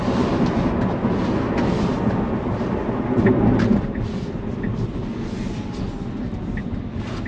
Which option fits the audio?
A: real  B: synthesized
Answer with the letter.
A